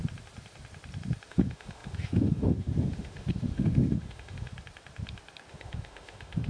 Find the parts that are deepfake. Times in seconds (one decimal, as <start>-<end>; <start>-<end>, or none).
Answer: 1.3-4.5; 5.5-6.5